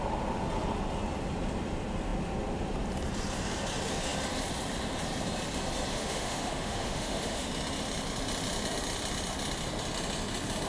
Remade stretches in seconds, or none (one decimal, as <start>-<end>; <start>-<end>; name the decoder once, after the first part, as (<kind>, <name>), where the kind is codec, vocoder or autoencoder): 5.9-7.5 (autoencoder, DAC-VAE)